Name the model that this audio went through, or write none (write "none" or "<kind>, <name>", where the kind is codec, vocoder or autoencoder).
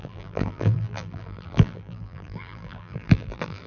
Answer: vocoder, BigVGAN v2